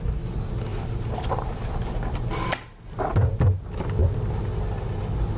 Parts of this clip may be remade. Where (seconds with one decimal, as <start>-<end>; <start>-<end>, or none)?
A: 0.7-3.6